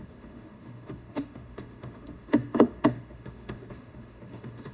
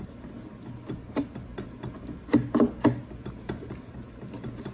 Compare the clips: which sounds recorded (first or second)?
second